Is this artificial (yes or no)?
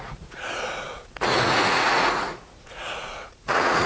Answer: yes